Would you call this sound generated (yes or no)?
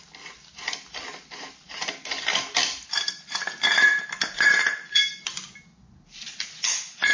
no